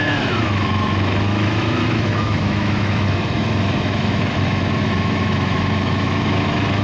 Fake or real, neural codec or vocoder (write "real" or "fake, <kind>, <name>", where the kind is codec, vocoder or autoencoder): fake, autoencoder, DAC-VAE